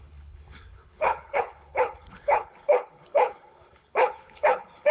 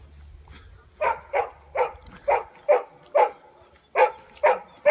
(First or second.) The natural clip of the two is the second